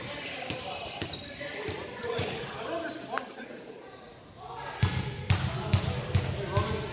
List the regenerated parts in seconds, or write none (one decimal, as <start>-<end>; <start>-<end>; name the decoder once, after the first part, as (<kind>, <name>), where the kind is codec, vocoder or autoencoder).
2.0-2.5 (vocoder, Vocos); 3.4-4.1